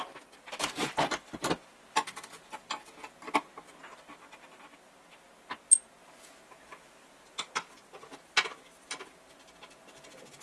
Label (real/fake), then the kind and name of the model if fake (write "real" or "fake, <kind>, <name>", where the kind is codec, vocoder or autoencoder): real